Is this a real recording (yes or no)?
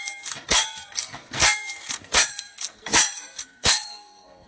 no